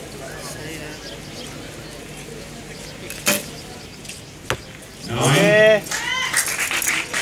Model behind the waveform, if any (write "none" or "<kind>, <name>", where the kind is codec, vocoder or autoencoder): none